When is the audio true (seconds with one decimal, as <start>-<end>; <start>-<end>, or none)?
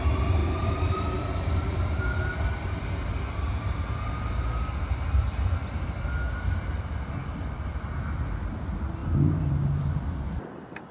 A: 0.0-0.4; 2.0-10.9